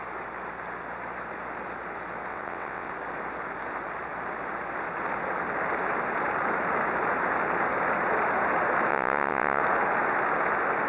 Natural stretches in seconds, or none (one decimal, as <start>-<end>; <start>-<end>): 0.0-2.3; 2.9-8.9; 9.6-10.9